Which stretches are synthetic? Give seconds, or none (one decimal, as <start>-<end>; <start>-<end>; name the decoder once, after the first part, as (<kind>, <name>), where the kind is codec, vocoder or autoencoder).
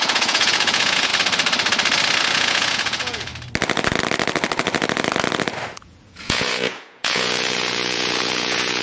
0.0-1.1 (vocoder, Vocos); 2.3-3.3; 5.7-8.8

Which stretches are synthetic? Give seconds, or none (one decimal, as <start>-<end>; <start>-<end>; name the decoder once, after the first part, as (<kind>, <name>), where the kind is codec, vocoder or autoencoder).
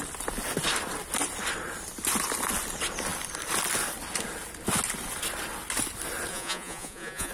6.3-7.3 (vocoder, Vocos)